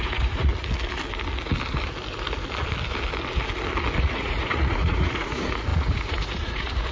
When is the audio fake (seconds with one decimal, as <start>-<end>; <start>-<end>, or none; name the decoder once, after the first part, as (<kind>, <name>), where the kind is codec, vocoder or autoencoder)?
0.0-0.5 (vocoder, Vocos); 4.0-6.9